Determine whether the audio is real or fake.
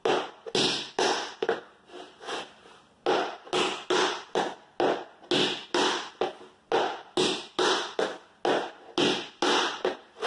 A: real